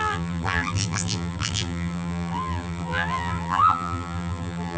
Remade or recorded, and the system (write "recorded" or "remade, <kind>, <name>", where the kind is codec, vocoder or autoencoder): remade, vocoder, BigVGAN v2